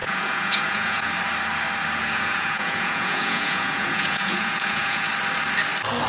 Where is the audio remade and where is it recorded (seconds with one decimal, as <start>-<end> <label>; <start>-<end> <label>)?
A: 0.0-1.1 remade; 1.1-2.0 recorded; 2.0-5.1 remade; 5.1-6.1 recorded